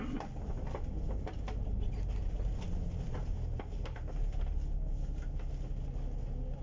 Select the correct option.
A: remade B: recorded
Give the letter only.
B